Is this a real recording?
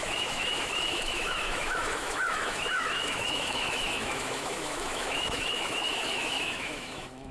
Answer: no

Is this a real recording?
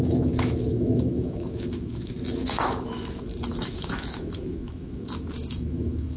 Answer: no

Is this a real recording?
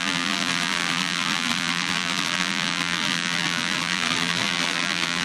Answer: no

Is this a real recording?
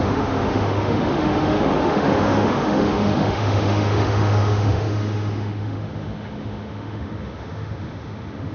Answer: no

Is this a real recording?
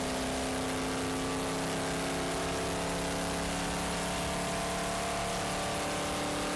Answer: yes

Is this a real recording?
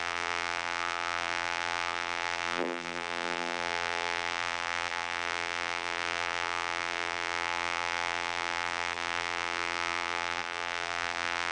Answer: no